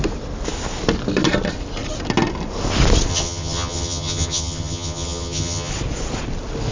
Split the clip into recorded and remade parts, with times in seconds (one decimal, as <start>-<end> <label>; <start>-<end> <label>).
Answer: 0.0-3.1 recorded; 3.1-5.7 remade; 5.7-6.7 recorded